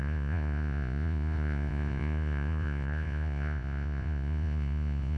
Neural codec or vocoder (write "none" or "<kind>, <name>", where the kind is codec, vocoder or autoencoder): vocoder, Vocos